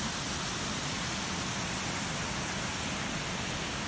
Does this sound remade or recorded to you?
recorded